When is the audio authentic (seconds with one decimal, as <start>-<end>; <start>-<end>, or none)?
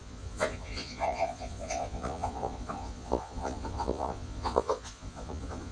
none